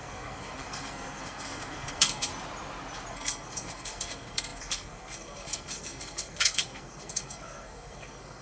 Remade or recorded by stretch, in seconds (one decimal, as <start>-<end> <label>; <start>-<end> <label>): 0.0-2.3 remade; 2.3-3.1 recorded; 3.1-8.4 remade